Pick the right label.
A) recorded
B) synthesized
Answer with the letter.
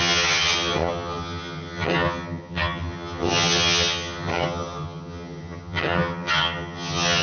B